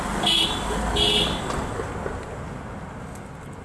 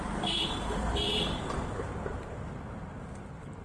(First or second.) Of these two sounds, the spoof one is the second